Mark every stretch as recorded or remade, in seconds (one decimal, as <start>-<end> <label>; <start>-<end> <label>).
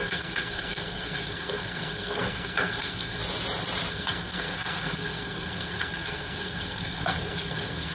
0.0-3.2 remade; 3.2-3.9 recorded; 3.9-7.9 remade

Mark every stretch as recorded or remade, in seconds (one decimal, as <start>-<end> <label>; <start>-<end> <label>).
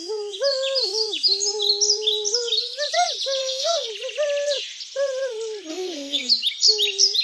0.0-3.4 recorded; 3.4-3.9 remade; 3.9-5.7 recorded; 5.7-6.3 remade; 6.3-7.2 recorded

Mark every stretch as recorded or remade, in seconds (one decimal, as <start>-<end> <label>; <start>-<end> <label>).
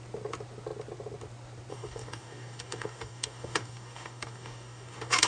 0.0-1.7 recorded; 1.7-5.3 remade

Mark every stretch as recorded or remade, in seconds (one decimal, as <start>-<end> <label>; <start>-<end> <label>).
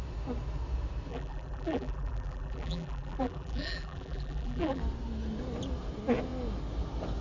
0.0-1.1 recorded; 1.1-4.8 remade; 4.8-7.2 recorded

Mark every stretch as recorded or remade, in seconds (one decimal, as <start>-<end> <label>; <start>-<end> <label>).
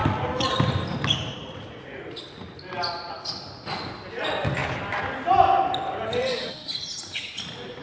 0.0-1.4 recorded; 1.4-2.2 remade; 2.2-7.8 recorded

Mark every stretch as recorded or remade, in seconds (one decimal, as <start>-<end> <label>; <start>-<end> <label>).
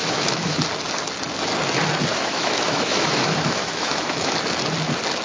0.0-0.6 remade; 0.6-2.1 recorded; 2.1-4.3 remade; 4.3-5.2 recorded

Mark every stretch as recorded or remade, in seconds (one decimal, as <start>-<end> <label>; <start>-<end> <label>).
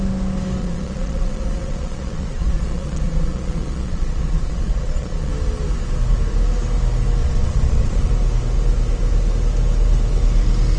0.0-0.6 recorded; 0.6-5.3 remade; 5.3-7.2 recorded; 7.2-8.1 remade; 8.1-10.8 recorded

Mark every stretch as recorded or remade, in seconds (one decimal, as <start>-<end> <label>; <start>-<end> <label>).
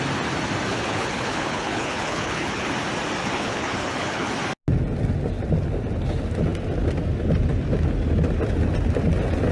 0.0-0.7 recorded; 0.7-2.7 remade; 2.7-3.2 recorded; 3.2-4.3 remade; 4.3-9.5 recorded